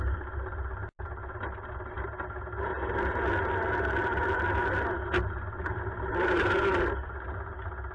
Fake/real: real